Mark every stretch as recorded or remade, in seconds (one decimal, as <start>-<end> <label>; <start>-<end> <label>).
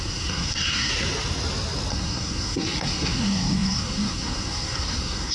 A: 0.0-0.9 remade; 0.9-1.9 recorded; 1.9-5.3 remade